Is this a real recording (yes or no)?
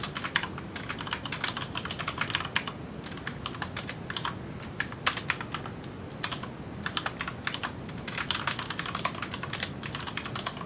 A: yes